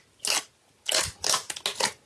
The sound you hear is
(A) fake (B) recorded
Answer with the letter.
B